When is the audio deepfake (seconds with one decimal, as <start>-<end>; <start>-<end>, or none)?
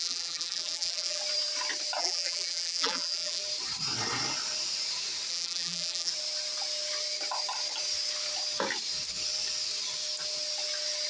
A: 0.0-1.2; 2.0-3.4; 5.3-6.1